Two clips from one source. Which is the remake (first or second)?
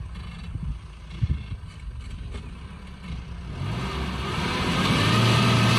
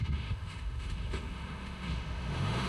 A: second